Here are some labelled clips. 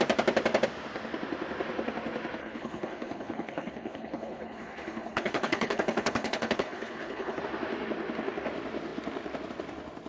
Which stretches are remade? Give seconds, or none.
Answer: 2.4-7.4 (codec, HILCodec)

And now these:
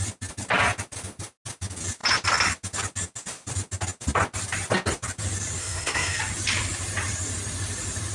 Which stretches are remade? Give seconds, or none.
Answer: 5.6-6.2 (codec, SNAC)

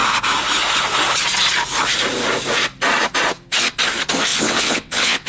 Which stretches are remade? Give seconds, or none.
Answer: 4.3-5.3 (vocoder, WaveNeXt)

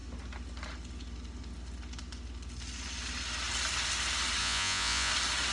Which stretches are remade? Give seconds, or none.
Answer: 4.4-5.1 (vocoder, Vocos)

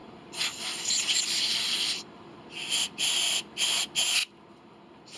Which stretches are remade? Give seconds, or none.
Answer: 0.0-3.1 (vocoder, BigVGAN v2)